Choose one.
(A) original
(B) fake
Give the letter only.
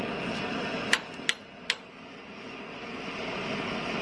A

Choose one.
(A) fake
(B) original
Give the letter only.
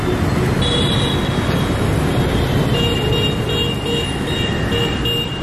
B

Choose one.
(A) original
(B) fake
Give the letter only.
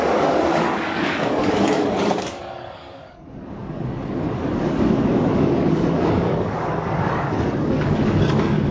B